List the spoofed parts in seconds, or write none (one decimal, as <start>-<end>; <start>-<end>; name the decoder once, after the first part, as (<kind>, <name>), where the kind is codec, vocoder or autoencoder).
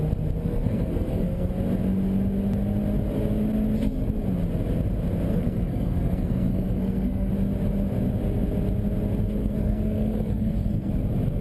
0.4-1.5 (codec, SNAC); 5.3-7.3; 9.4-10.9